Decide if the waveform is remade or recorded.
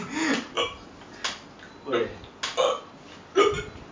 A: recorded